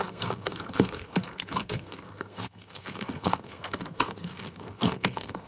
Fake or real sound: fake